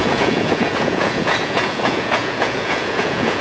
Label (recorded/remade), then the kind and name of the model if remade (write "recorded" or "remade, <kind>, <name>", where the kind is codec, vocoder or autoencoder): remade, vocoder, Vocos